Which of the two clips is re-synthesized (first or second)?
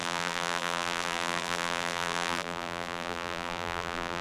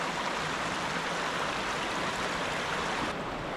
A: first